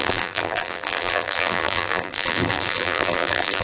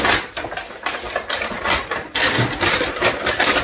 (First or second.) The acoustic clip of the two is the second